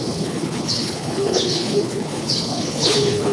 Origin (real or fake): fake